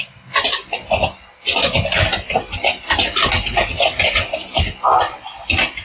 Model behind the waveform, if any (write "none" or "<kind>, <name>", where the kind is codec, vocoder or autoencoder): none